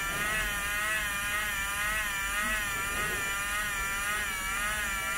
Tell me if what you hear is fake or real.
real